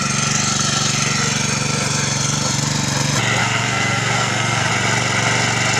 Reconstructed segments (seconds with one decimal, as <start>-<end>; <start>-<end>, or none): 3.4-4.7